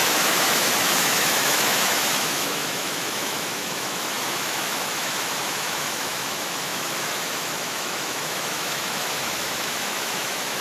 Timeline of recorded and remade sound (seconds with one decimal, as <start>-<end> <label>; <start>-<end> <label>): 0.0-10.6 remade